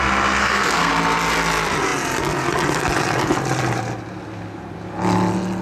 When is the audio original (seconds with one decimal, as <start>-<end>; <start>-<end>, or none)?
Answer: 0.0-0.4; 0.9-5.6